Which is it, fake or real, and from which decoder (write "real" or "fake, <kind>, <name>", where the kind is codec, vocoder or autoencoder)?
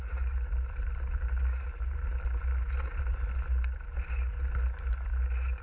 real